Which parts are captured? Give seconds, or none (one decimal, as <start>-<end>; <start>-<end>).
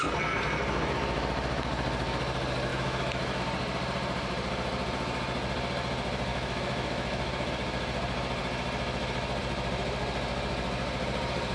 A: 0.0-2.7; 3.4-6.3; 7.5-11.5